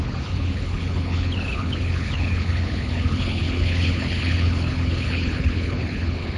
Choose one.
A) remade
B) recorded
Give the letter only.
A